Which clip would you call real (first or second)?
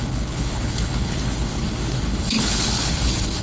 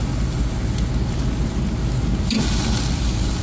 second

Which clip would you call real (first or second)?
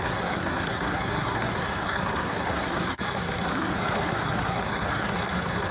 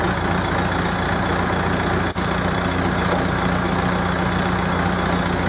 second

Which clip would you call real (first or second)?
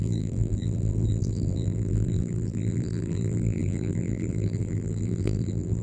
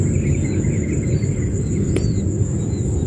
second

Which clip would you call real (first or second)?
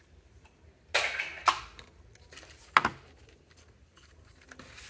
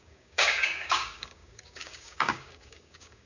first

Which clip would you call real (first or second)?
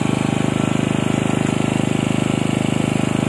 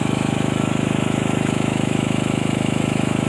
first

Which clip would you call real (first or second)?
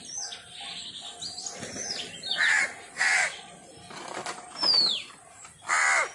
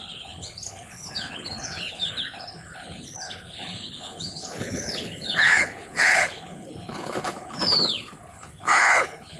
first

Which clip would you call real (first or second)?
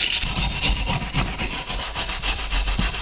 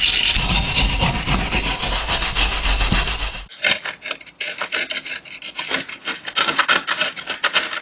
second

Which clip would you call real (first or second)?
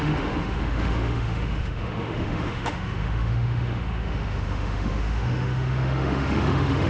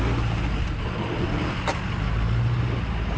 second